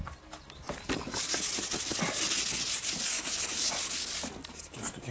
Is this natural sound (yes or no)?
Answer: yes